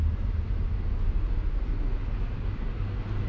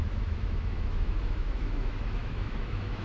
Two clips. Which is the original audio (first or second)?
first